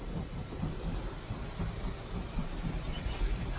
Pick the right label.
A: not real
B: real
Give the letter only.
A